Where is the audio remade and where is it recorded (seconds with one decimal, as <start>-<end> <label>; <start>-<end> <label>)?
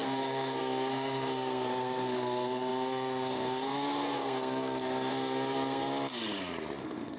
0.0-5.9 remade; 5.9-6.8 recorded; 6.8-7.2 remade